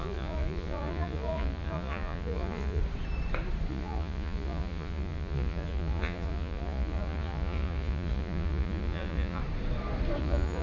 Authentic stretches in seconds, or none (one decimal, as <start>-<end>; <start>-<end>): 2.8-3.7; 9.4-10.2